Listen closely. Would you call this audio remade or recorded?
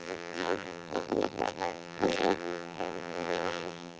remade